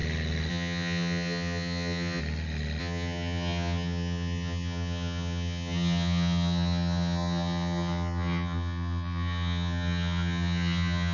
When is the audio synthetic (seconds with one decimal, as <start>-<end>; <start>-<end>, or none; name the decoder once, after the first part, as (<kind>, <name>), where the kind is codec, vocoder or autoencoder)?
0.5-2.2 (vocoder, HiFi-GAN); 2.8-11.1